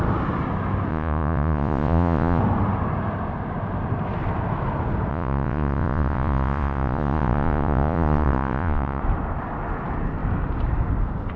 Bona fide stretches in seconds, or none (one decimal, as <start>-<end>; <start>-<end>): 0.0-0.9; 2.4-5.1; 9.0-11.4